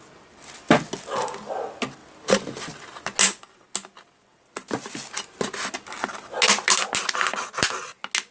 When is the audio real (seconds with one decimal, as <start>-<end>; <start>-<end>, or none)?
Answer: 0.0-8.3